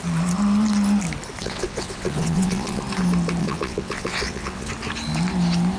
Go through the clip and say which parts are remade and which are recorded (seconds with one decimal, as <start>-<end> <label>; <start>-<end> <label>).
0.0-1.4 recorded; 1.4-2.8 remade; 2.8-3.4 recorded; 3.4-4.7 remade; 4.7-5.8 recorded